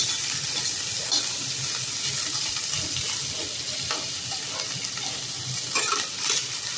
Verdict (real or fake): real